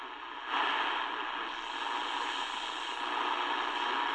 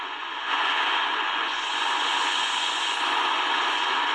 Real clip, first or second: first